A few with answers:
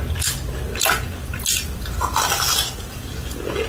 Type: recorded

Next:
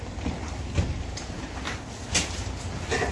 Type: recorded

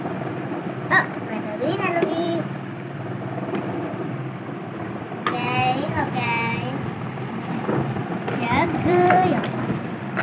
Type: remade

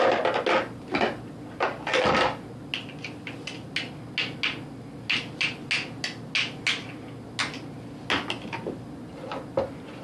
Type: recorded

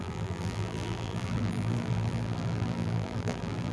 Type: remade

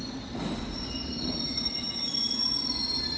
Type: recorded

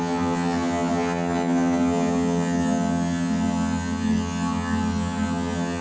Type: remade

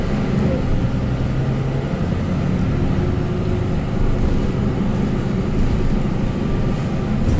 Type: recorded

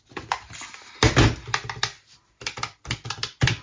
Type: recorded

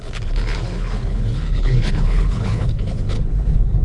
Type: remade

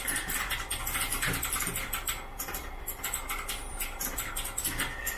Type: recorded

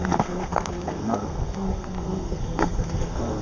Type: remade